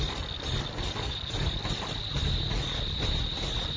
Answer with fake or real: real